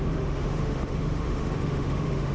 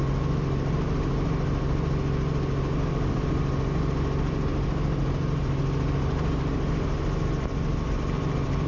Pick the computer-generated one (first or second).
first